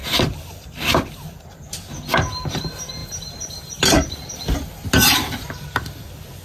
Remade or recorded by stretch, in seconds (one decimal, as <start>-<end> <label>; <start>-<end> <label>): 0.0-3.0 recorded; 3.0-4.9 remade; 4.9-6.4 recorded